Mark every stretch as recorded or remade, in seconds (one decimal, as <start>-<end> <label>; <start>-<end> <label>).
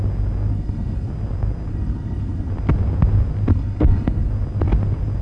0.0-0.5 recorded; 0.5-1.1 remade; 1.1-1.7 recorded; 1.7-2.5 remade; 2.5-3.5 recorded; 3.5-4.3 remade; 4.3-5.2 recorded